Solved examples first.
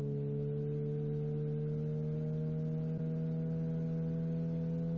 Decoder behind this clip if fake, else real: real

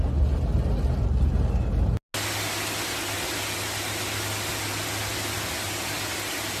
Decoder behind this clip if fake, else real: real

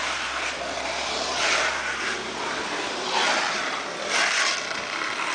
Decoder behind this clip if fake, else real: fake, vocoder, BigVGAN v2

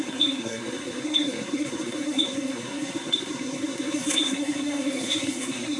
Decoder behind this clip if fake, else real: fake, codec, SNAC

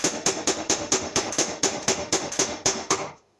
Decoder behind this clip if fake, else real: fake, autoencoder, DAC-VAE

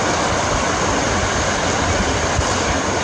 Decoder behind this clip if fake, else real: real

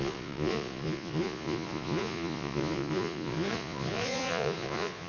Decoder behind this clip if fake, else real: fake, vocoder, Vocos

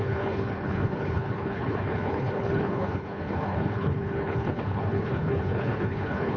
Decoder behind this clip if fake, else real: fake, codec, HILCodec